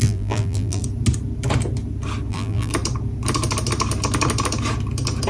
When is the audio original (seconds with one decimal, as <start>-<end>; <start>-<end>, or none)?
0.8-2.3; 2.7-5.3

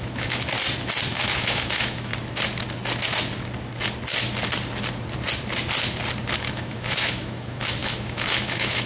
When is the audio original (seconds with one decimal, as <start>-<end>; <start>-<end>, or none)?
0.5-1.1; 2.1-6.4